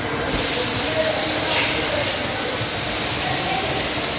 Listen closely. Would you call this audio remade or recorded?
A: recorded